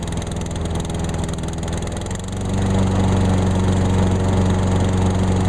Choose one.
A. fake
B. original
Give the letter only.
B